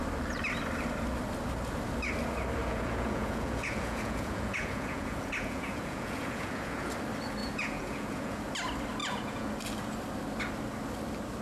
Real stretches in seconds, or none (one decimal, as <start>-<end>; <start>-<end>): 0.0-2.6; 6.9-7.4; 8.4-9.0; 9.5-11.4